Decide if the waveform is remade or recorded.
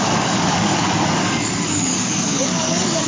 remade